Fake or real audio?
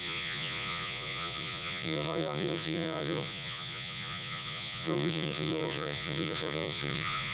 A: fake